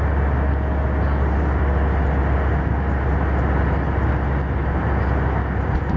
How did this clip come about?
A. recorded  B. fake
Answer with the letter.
A